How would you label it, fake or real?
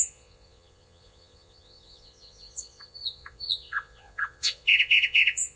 fake